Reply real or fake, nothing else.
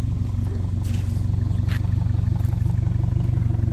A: real